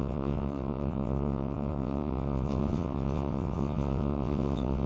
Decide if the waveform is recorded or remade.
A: remade